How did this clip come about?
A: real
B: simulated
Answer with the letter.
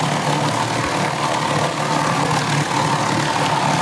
A